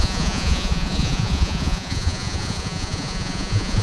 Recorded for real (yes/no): no